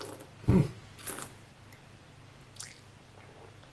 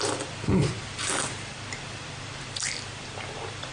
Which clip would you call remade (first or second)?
second